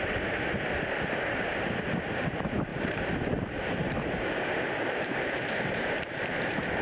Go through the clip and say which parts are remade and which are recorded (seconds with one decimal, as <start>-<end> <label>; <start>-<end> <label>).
0.0-6.8 remade